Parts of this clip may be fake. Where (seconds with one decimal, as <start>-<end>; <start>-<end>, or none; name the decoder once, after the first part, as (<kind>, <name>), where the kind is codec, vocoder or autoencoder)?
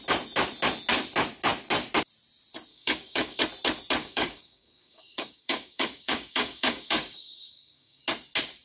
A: 2.7-3.4 (codec, DAC); 4.0-8.0